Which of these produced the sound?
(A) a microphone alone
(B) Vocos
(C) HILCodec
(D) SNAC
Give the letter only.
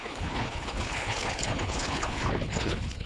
C